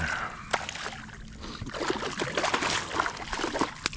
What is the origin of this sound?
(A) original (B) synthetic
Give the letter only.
A